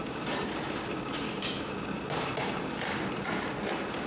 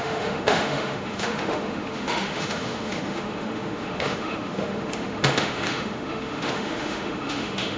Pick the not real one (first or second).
second